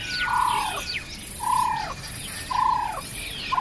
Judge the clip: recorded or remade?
recorded